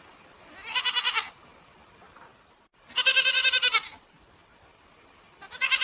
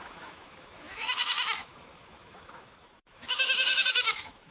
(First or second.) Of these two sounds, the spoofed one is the second